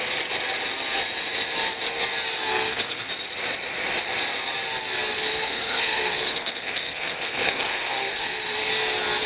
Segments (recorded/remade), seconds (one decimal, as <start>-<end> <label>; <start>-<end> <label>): 0.0-2.5 recorded; 2.5-3.1 remade; 3.1-5.3 recorded; 5.3-8.7 remade; 8.7-9.3 recorded